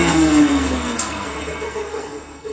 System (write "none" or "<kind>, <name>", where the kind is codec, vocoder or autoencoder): codec, SNAC